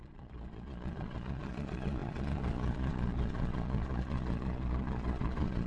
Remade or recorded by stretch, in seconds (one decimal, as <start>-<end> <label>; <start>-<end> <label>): 0.0-5.7 remade